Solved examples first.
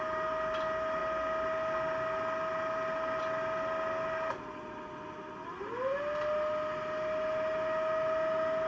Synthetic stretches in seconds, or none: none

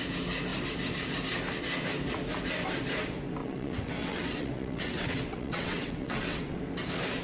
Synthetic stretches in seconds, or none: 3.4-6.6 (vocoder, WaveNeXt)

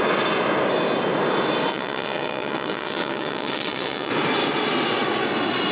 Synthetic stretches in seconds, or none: 1.7-4.1 (vocoder, WaveNeXt)